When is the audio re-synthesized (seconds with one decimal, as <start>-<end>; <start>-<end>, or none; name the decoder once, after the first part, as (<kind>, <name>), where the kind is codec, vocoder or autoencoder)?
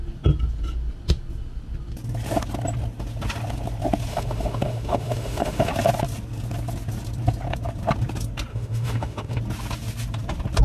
4.1-5.7 (autoencoder, DAC-VAE); 8.5-9.4